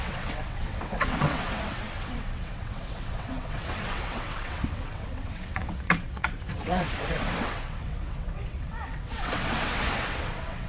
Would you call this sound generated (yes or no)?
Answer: yes